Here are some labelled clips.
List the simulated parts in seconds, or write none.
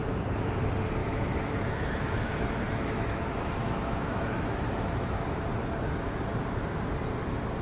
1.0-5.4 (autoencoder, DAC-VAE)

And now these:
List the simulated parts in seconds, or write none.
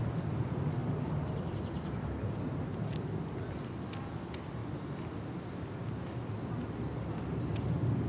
none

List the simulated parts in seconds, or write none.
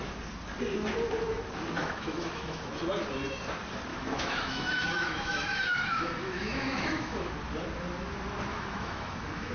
1.8-2.7 (autoencoder, DAC-VAE); 3.9-7.3; 8.5-9.5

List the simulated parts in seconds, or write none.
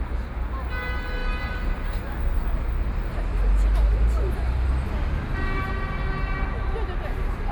none